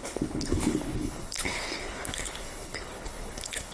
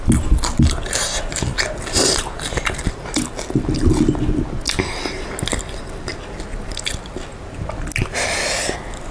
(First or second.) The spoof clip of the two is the first